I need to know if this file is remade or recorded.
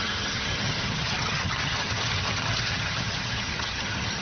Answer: remade